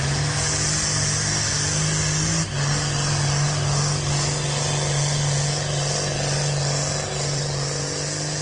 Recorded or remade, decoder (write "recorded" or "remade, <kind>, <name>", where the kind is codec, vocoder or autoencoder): recorded